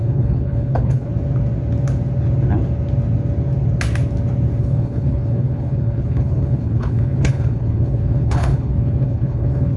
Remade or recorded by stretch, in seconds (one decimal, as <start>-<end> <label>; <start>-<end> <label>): 0.0-1.1 remade; 1.1-4.6 recorded; 4.6-9.8 remade